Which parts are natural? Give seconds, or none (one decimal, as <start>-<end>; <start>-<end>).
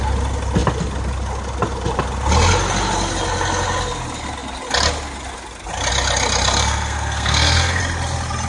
0.0-6.6; 7.8-8.5